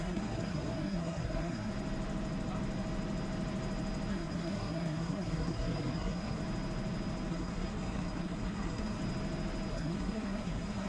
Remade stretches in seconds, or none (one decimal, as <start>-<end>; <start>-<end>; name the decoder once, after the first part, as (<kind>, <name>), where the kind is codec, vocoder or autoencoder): 0.0-1.7 (codec, SNAC); 4.1-6.4; 7.3-9.0; 9.7-10.9